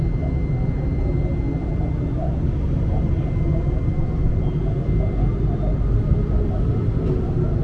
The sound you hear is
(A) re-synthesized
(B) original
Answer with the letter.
B